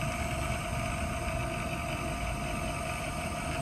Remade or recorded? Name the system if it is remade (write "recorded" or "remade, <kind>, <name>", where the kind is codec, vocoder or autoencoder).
recorded